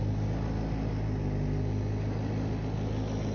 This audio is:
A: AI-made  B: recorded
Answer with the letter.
B